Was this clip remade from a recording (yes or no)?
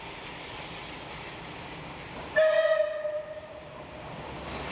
no